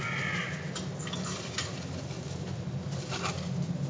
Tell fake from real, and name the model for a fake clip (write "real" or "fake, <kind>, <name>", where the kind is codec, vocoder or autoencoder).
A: real